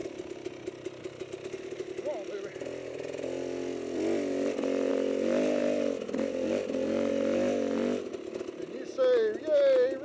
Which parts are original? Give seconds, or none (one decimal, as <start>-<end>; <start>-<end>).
0.0-10.0